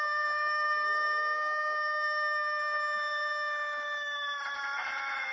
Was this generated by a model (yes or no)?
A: no